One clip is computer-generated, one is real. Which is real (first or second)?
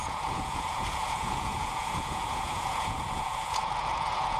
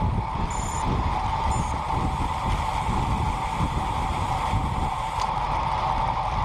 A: second